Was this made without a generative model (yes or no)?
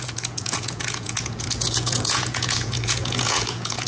no